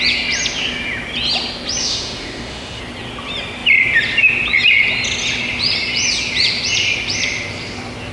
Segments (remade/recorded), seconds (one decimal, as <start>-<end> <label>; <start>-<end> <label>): 0.0-1.8 recorded; 1.8-2.8 remade; 2.8-8.1 recorded